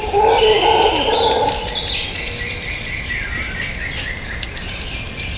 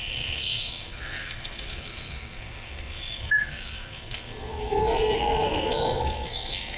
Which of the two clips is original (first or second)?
first